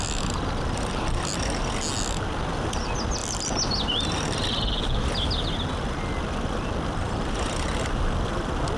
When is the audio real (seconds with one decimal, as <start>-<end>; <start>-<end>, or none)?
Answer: 0.0-8.8